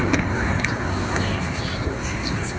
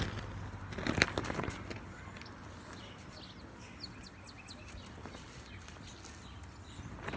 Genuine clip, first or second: second